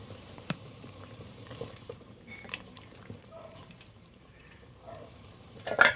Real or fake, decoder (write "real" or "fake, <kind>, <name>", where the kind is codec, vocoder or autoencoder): fake, vocoder, BigVGAN v2